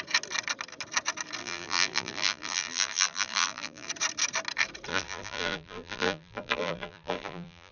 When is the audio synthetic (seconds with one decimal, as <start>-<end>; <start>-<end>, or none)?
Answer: 1.4-3.9; 4.9-7.7